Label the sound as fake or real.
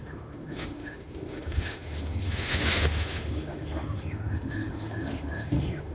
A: fake